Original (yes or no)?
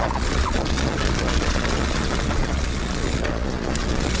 no